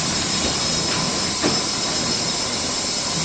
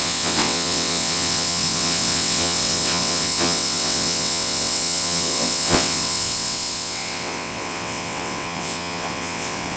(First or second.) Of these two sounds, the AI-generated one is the second